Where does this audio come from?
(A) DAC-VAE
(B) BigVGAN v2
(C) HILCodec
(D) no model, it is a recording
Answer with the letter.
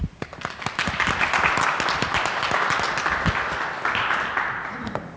D